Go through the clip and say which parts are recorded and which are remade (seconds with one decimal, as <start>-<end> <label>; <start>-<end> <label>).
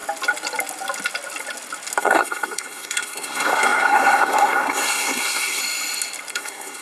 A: 0.0-2.0 recorded; 2.0-5.6 remade; 5.6-6.3 recorded; 6.3-6.8 remade